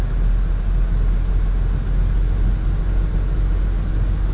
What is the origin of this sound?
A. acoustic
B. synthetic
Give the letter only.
A